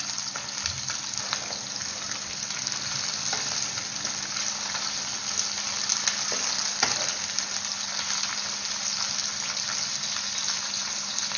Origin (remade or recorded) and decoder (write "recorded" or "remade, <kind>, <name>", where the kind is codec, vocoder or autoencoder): recorded